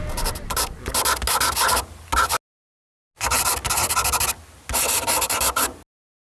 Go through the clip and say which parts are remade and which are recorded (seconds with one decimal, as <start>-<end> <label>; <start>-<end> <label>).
0.0-6.3 recorded